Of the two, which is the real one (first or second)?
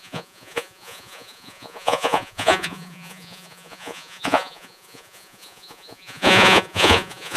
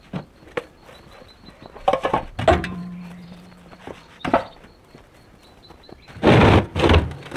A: second